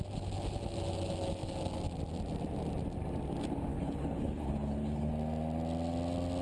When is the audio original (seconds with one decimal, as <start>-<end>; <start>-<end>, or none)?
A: 0.0-3.7; 5.1-6.4